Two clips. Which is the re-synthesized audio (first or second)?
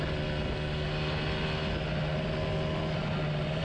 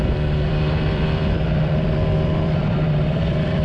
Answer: second